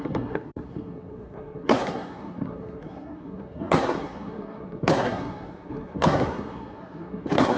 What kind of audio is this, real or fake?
fake